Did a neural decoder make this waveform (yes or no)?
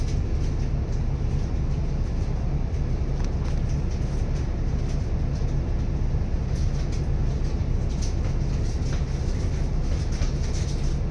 no